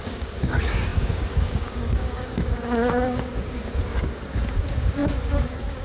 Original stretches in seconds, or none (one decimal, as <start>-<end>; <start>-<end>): none